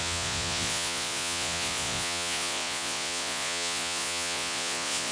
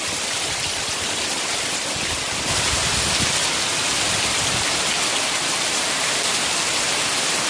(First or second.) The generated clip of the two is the first